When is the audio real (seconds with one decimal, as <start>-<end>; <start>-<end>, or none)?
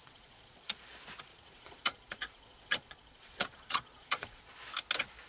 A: 0.8-1.3; 4.5-5.3